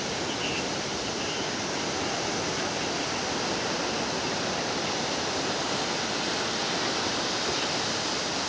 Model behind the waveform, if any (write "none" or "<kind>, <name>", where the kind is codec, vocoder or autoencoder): vocoder, BigVGAN v2